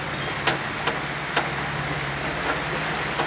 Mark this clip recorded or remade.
recorded